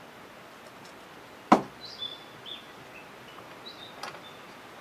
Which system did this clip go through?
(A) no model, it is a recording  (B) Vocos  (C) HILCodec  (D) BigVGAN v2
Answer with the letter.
A